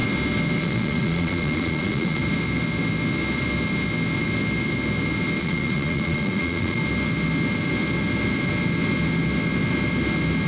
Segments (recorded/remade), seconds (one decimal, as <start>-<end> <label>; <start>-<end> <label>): 0.0-0.6 recorded; 0.6-2.2 remade; 2.2-5.4 recorded; 5.4-6.8 remade; 6.8-10.5 recorded